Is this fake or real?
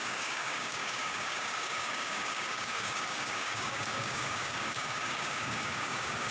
fake